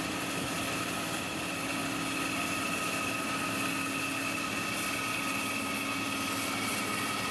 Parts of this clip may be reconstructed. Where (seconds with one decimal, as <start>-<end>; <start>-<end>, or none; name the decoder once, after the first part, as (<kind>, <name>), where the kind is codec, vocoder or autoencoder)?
none